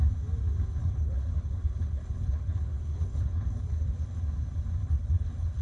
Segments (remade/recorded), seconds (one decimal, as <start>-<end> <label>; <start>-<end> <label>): 0.0-0.8 recorded; 0.8-4.2 remade; 4.2-4.8 recorded; 4.8-5.6 remade